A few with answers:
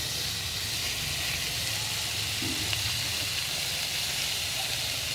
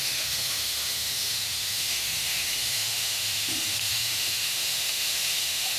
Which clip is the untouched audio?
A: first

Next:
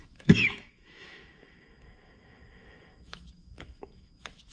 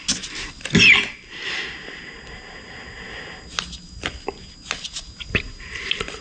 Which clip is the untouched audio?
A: second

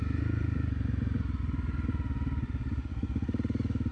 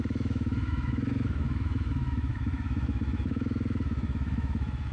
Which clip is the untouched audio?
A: first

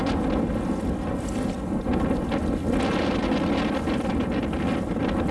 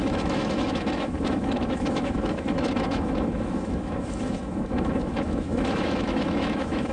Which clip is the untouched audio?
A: first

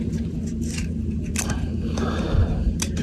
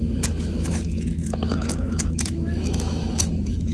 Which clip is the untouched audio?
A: first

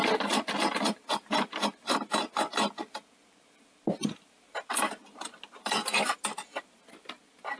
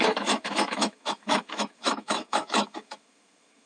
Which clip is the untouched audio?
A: first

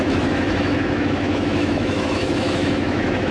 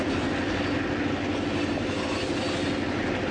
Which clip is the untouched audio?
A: second